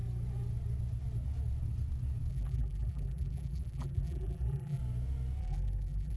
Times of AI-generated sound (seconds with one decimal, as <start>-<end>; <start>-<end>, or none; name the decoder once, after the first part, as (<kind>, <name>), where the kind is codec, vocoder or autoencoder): 2.3-4.8 (vocoder, BigVGAN v2); 5.4-6.2